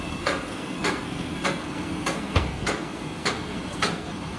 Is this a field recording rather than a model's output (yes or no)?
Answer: no